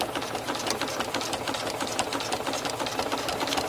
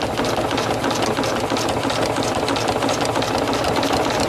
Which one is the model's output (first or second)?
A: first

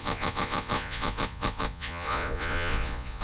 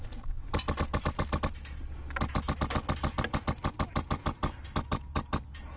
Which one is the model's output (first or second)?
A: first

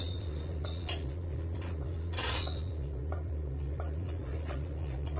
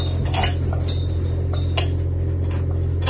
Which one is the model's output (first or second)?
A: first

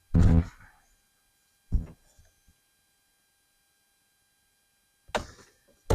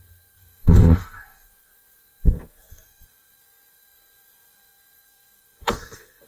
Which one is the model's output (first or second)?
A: second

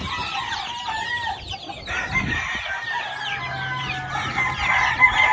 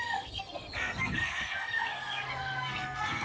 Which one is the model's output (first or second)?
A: second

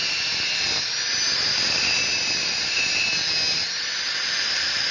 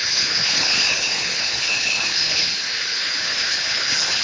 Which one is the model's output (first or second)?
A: second